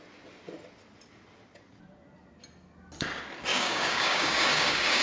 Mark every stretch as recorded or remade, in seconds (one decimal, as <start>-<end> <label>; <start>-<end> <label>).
0.0-3.5 recorded; 3.5-5.0 remade